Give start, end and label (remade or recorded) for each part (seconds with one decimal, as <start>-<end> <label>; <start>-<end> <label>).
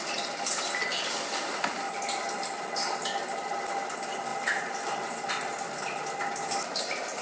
0.0-7.2 recorded